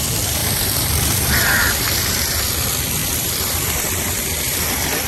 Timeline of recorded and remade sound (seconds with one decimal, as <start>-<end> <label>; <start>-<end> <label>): 0.0-0.4 recorded; 0.4-2.5 remade; 2.5-3.0 recorded; 3.0-5.1 remade